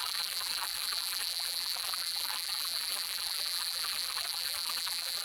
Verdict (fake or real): fake